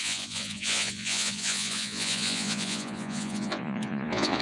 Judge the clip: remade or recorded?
remade